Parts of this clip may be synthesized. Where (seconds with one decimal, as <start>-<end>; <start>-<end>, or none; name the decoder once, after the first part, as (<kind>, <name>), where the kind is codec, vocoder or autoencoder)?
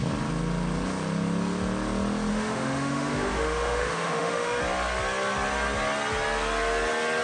2.3-4.6 (autoencoder, DAC-VAE)